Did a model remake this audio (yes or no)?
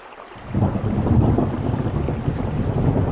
no